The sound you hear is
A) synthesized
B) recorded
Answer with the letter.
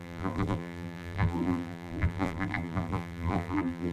A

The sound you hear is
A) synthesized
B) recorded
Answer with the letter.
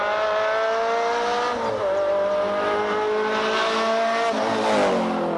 B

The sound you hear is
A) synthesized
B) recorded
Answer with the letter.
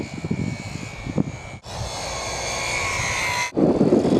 B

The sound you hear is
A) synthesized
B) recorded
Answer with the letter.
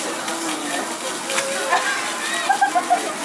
B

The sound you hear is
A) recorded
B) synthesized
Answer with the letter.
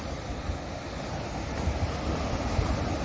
A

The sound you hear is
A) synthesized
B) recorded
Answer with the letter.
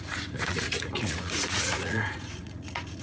A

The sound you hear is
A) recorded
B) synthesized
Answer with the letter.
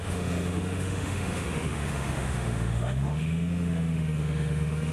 B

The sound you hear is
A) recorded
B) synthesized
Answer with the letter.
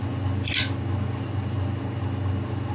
A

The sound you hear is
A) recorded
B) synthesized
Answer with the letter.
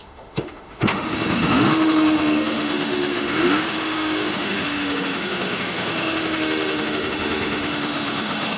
B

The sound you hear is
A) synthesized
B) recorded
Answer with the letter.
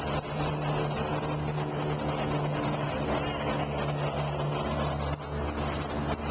B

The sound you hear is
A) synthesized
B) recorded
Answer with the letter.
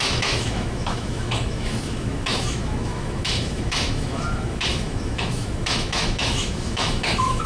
A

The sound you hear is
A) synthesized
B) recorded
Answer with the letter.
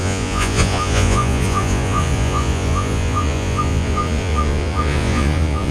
A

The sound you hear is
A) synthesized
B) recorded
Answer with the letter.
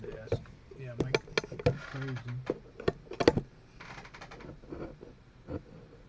B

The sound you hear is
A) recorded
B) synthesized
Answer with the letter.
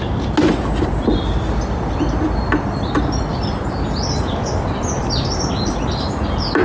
A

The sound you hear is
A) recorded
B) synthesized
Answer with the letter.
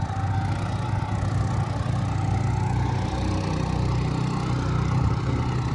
A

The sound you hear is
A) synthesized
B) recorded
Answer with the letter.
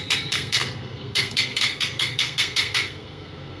A